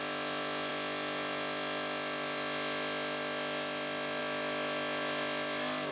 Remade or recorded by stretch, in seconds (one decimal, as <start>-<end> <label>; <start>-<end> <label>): 0.0-5.9 recorded